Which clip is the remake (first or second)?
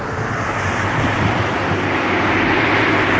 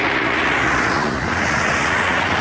second